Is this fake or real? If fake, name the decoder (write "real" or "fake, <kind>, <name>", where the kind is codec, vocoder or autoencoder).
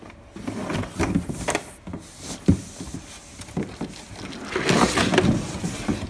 real